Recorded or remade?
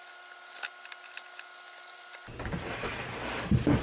recorded